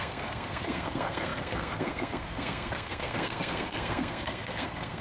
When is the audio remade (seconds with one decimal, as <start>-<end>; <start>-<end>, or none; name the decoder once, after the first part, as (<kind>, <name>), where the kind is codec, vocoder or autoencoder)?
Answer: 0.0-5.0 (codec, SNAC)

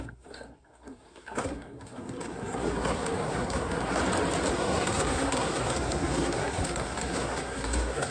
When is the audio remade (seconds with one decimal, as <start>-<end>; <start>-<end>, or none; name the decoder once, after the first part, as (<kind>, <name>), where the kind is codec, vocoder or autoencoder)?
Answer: 0.0-4.0 (codec, SNAC); 4.5-8.1

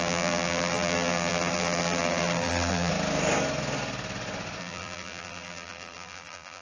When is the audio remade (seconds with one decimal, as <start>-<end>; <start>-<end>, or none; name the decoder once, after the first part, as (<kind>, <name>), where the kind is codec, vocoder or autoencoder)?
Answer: 0.0-2.9 (vocoder, BigVGAN v2); 4.6-6.6

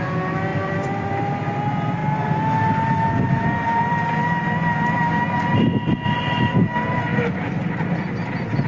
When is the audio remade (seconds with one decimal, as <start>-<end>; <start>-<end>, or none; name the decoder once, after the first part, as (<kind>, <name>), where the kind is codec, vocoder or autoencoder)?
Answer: 0.5-1.3 (vocoder, BigVGAN v2)

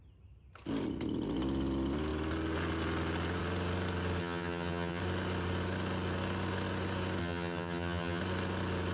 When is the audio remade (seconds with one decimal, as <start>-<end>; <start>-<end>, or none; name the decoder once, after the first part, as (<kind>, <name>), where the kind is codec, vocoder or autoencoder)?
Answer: 4.2-5.0 (vocoder, HiFi-GAN); 7.2-8.2

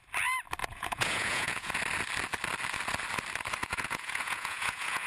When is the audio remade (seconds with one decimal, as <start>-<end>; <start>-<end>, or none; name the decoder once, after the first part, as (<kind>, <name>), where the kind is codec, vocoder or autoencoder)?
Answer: 0.6-1.7 (vocoder, Vocos); 3.6-5.1

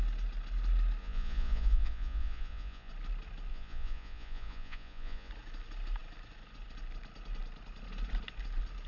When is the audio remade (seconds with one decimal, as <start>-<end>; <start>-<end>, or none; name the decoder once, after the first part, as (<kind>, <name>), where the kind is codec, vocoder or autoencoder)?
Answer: 1.0-2.9 (vocoder, Vocos); 3.5-5.3